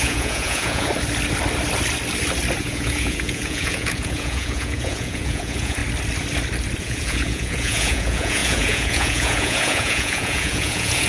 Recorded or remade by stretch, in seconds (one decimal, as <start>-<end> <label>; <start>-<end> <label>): 0.0-0.9 remade; 0.9-2.6 recorded; 2.6-5.8 remade; 5.8-6.8 recorded; 6.8-11.1 remade